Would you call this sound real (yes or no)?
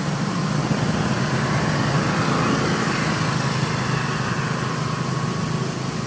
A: yes